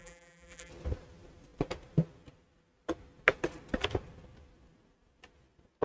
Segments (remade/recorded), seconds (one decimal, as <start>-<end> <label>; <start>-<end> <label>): 0.0-0.7 remade; 0.7-5.8 recorded